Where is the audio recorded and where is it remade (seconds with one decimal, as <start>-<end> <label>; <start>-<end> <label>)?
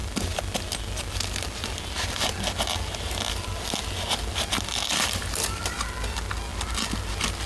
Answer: 0.0-7.5 recorded